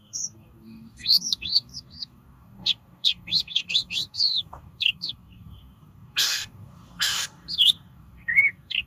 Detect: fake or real fake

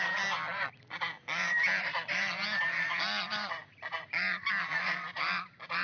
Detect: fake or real real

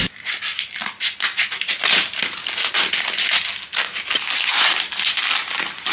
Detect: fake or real real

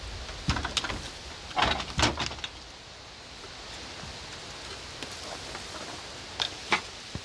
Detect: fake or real real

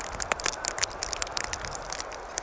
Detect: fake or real real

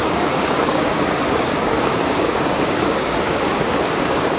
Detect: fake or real fake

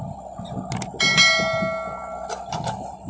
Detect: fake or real real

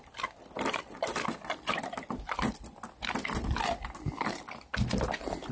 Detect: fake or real real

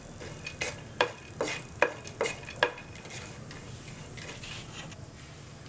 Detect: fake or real real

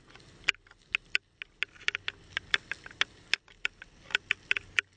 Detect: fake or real real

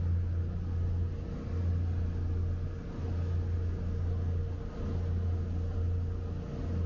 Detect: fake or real real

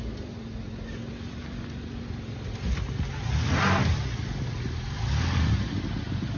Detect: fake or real real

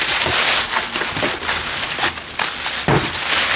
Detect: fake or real real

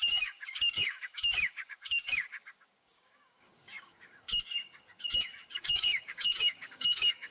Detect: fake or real fake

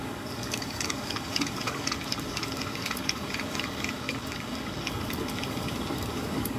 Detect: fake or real fake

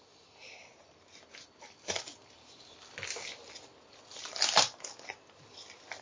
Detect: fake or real real